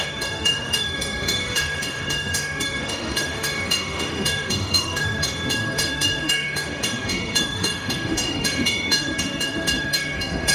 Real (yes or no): no